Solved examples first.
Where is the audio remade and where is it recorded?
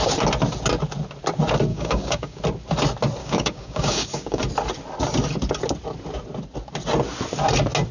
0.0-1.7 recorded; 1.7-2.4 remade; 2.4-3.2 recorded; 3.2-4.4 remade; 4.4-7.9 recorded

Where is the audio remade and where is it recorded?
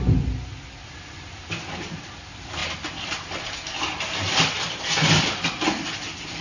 0.0-6.4 recorded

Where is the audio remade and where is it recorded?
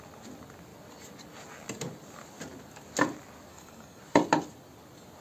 0.0-3.5 recorded; 3.5-4.0 remade; 4.0-5.2 recorded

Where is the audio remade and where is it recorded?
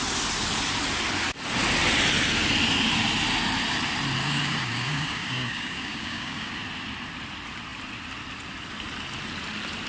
0.0-4.2 recorded; 4.2-6.5 remade; 6.5-9.9 recorded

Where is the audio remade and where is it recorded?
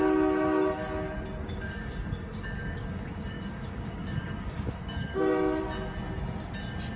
0.0-1.4 recorded; 1.4-5.6 remade; 5.6-7.0 recorded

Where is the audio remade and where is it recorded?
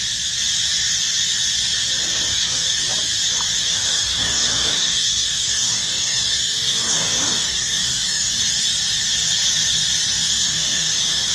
0.0-2.3 recorded; 2.3-2.8 remade; 2.8-3.6 recorded; 3.6-8.4 remade; 8.4-10.3 recorded; 10.3-11.3 remade